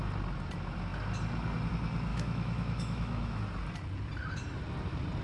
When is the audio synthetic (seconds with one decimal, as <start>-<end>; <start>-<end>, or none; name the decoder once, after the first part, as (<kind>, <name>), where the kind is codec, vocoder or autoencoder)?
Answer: 2.1-3.4 (autoencoder, DAC-VAE)

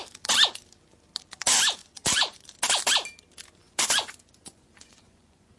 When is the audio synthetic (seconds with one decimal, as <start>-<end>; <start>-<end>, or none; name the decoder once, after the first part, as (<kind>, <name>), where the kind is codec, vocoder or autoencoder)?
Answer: 1.8-2.5 (vocoder, Vocos); 3.6-5.6

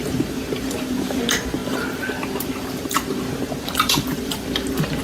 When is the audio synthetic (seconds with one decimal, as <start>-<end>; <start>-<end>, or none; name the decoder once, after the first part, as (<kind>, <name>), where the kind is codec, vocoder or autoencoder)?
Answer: 0.0-5.0 (vocoder, BigVGAN v2)

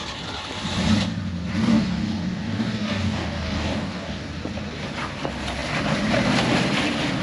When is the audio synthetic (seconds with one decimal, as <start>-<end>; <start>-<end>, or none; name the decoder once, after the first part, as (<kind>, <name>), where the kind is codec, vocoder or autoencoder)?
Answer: 1.6-4.3 (codec, DAC)

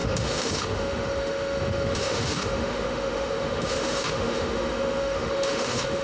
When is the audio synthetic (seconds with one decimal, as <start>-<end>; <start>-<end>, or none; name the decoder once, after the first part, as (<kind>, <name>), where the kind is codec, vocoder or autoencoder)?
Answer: 0.0-6.0 (autoencoder, DAC-VAE)

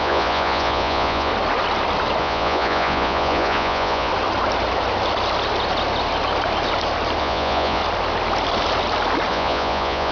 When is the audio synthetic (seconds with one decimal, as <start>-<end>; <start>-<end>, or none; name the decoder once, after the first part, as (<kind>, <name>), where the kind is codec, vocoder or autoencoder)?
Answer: 0.0-1.3 (vocoder, Vocos); 2.2-4.1; 7.2-7.8; 9.3-10.1

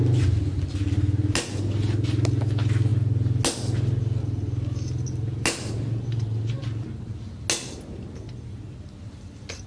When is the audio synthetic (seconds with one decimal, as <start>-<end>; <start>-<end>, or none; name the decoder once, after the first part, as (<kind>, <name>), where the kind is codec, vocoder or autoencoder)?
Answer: none

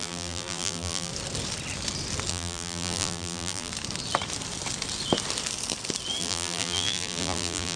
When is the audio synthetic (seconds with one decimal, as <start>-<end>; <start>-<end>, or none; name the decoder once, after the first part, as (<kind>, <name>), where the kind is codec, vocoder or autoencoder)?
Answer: 0.0-1.1 (vocoder, BigVGAN v2); 2.3-3.7; 6.2-7.8